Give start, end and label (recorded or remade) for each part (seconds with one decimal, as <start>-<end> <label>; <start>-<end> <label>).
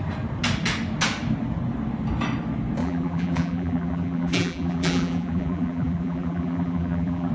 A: 0.0-2.8 recorded; 2.8-7.3 remade